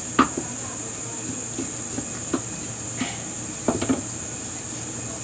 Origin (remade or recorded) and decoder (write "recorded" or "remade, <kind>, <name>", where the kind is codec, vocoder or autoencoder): recorded